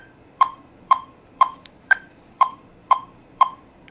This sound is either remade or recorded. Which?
remade